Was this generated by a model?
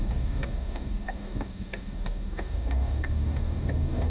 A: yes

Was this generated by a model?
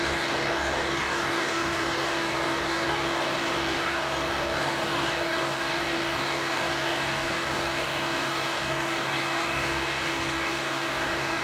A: yes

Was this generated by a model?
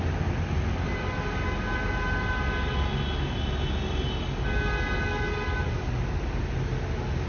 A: no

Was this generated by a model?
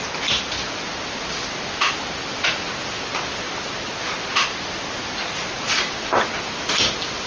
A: no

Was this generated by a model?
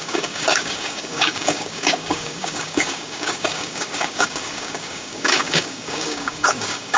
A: yes